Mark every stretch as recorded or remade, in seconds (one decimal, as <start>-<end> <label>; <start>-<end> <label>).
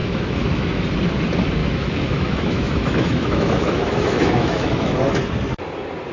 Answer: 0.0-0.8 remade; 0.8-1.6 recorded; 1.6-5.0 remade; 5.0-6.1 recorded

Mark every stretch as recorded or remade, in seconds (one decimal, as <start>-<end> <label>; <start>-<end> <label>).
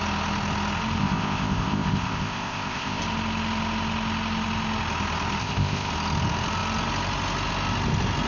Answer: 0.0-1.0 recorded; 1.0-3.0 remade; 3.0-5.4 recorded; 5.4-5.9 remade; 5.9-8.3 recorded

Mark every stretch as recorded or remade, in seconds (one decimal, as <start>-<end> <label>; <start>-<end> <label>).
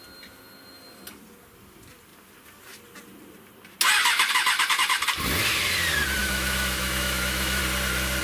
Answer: 0.0-6.2 recorded; 6.2-7.6 remade; 7.6-8.2 recorded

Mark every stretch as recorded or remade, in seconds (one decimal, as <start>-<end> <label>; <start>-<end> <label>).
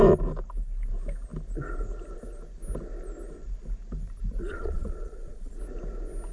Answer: 0.0-4.4 recorded; 4.4-5.6 remade; 5.6-6.3 recorded